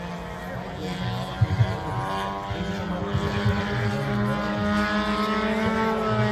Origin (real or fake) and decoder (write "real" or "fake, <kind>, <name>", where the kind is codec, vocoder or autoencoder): real